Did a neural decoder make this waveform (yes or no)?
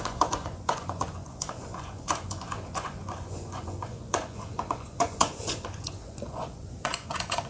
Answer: yes